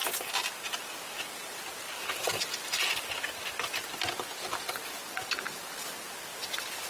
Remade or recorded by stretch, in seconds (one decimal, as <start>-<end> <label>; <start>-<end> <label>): 0.0-6.9 recorded